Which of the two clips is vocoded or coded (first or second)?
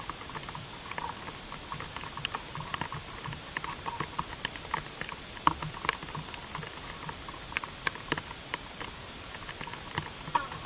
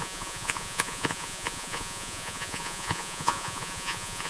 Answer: second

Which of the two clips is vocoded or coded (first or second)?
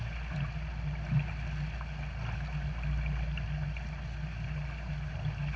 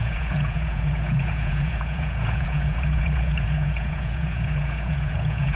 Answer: second